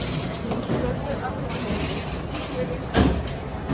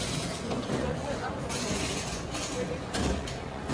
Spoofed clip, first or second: second